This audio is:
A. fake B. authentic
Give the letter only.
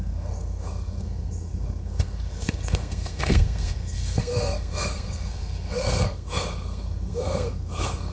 A